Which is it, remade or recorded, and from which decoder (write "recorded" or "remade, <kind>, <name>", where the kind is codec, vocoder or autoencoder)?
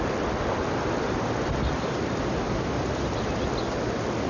recorded